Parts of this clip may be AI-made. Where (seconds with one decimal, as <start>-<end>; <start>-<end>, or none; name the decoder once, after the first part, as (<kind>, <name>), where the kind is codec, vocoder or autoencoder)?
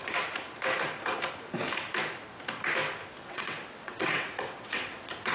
3.2-5.3 (vocoder, WaveNeXt)